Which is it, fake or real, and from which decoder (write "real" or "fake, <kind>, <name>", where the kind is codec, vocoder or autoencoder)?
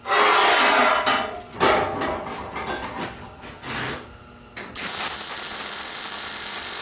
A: real